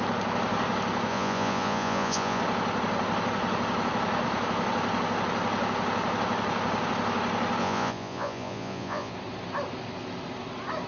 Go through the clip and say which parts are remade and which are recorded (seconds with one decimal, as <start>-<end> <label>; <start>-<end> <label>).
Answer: 0.0-1.1 recorded; 1.1-2.4 remade; 2.4-7.6 recorded; 7.6-9.1 remade; 9.1-10.9 recorded